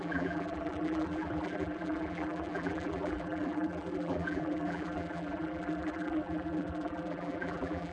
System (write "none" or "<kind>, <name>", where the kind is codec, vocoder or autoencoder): vocoder, BigVGAN v2